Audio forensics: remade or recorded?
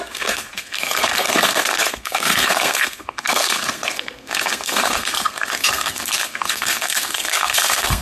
remade